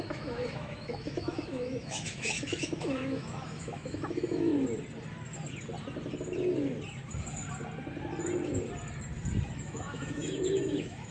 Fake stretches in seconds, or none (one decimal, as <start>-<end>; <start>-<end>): 0.0-4.5; 9.6-11.1